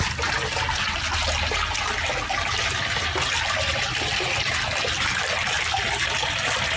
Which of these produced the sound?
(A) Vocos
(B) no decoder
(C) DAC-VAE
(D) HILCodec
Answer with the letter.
B